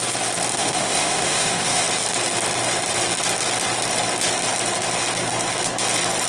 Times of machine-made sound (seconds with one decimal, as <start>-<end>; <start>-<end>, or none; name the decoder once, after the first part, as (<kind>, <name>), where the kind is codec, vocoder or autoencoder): 0.5-1.8 (autoencoder, DAC-VAE)